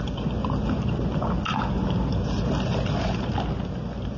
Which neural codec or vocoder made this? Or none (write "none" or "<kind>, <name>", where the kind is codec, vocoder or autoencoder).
none